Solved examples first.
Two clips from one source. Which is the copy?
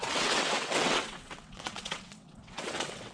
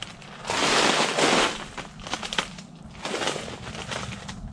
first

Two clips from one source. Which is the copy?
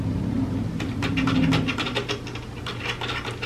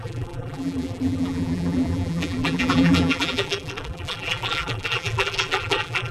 second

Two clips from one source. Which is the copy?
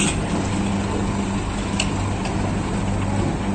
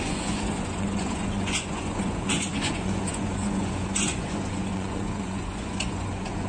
second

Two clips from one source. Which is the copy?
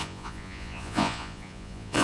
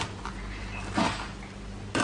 first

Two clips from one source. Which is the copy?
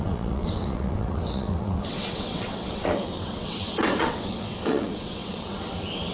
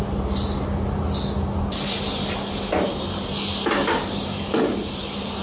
first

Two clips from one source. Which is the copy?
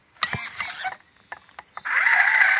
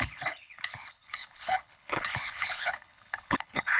second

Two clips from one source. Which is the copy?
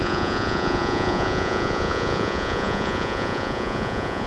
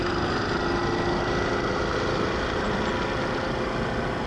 first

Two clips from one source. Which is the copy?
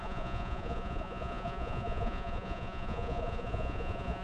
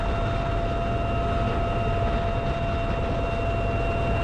first